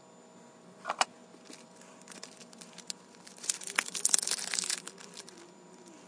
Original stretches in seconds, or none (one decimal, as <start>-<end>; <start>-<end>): 0.0-6.1